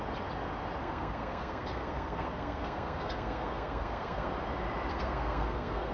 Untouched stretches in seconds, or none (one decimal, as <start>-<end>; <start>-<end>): 0.0-0.8; 4.3-4.9